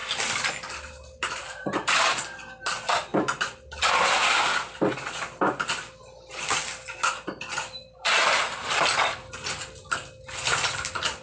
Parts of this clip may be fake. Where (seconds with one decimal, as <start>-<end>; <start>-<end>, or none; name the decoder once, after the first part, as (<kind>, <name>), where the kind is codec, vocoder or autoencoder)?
0.9-3.1 (vocoder, BigVGAN v2); 5.7-11.2